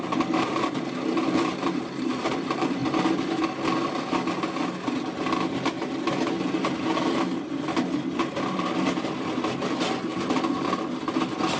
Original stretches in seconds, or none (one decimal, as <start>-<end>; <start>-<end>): 2.8-7.1; 10.1-11.6

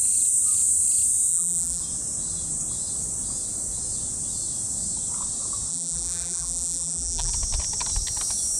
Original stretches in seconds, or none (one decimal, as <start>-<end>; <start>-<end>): 0.0-1.3; 1.8-5.7; 7.3-8.6

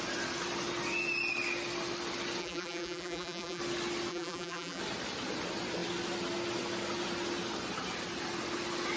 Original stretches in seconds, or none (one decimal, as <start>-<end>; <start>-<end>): 0.0-2.4; 3.6-4.1; 4.8-9.0

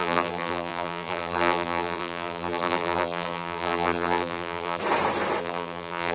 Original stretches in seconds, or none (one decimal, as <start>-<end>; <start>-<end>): 4.8-5.4

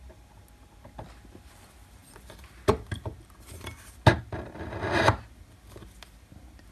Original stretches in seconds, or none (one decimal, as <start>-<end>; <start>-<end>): 0.0-6.7

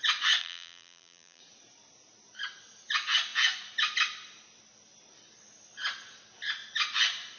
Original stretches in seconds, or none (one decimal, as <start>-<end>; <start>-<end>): 0.0-0.4; 1.4-7.4

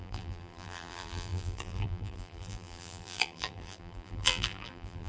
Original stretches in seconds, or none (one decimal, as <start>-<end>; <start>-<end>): none